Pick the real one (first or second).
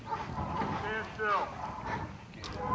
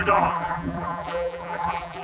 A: first